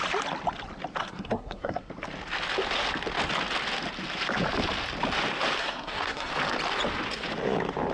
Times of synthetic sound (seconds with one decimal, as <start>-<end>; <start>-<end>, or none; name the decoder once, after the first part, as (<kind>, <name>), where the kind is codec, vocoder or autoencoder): 1.0-1.9 (codec, SNAC); 5.6-6.3